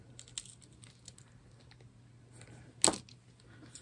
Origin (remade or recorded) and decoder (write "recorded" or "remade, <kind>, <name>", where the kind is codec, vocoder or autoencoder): recorded